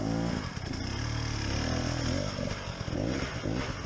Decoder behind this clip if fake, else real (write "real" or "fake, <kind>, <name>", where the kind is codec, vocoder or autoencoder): real